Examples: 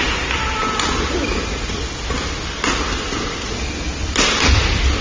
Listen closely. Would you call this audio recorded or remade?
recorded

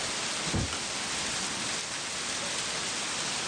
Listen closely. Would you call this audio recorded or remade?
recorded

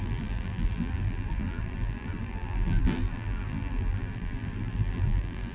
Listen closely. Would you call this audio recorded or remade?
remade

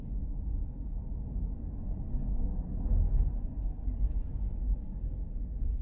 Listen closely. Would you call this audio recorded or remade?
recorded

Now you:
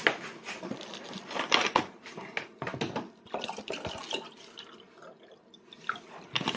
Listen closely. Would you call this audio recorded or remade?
recorded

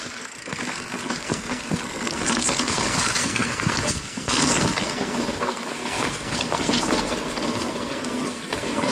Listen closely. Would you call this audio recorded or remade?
remade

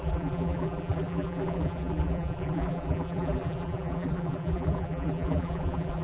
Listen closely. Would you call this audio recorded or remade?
remade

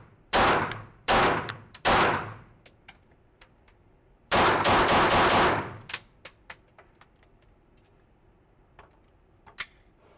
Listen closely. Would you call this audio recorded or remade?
remade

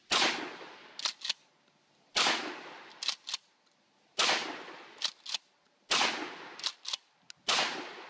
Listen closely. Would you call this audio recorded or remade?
recorded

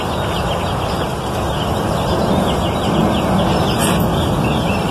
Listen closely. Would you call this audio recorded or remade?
recorded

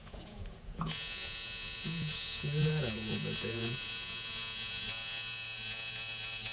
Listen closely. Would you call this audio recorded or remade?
remade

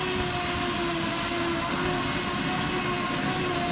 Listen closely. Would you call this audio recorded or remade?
recorded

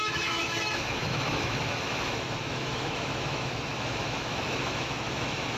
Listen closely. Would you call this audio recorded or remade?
remade